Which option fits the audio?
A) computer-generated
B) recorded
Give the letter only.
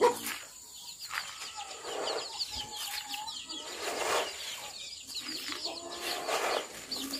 B